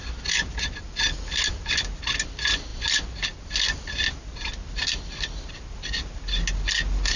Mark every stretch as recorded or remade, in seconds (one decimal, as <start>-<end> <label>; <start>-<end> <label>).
0.0-7.2 recorded